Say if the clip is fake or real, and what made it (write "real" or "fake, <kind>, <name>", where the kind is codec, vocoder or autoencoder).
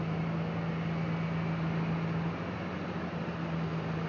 real